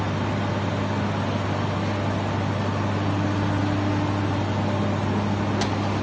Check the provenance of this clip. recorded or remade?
recorded